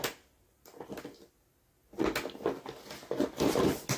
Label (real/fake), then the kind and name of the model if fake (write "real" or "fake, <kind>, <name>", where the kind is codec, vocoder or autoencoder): real